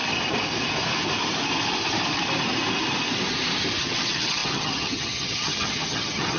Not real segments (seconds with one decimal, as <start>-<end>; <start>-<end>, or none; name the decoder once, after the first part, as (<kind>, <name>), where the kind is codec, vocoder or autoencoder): 3.8-6.4 (vocoder, HiFi-GAN)